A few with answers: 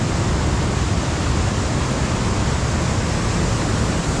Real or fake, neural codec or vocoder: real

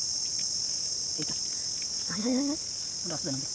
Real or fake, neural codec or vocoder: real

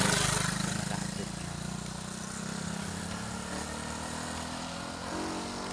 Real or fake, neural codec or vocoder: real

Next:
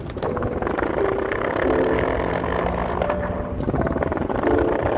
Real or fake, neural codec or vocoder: real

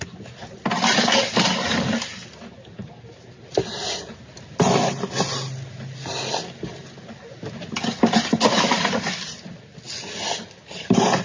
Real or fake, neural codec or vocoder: real